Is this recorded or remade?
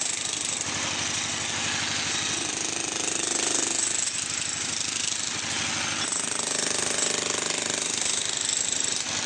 recorded